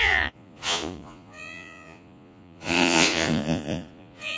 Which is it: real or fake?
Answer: fake